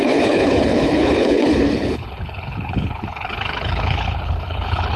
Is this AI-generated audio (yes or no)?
yes